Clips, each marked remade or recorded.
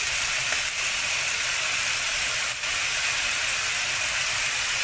recorded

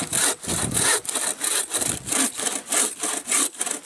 recorded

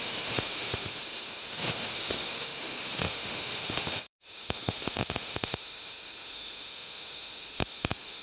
remade